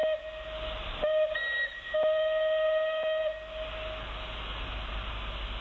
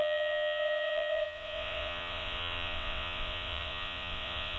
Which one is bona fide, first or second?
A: first